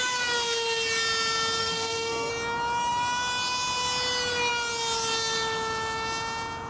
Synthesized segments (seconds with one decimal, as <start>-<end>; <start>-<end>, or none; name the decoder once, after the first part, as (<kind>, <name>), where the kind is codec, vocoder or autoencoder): 1.6-2.3 (codec, SNAC)